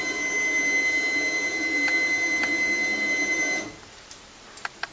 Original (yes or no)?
yes